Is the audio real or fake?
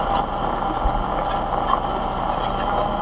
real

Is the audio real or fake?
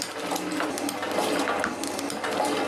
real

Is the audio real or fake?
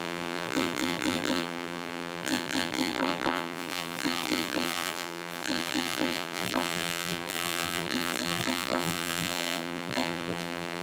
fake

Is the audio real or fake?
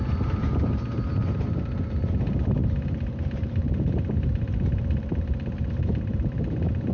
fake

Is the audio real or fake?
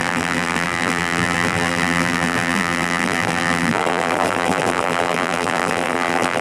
fake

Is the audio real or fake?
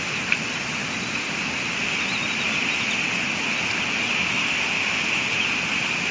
real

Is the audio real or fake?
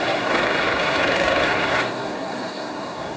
fake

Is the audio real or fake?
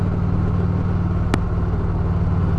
real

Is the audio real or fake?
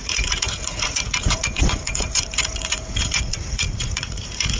fake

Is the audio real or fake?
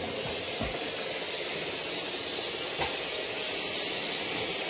real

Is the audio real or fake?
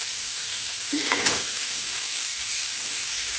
fake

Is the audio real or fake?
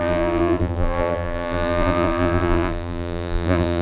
fake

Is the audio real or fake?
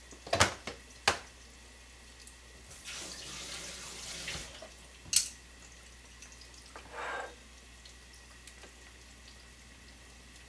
real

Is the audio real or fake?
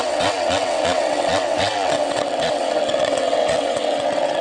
fake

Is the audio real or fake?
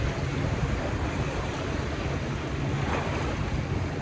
real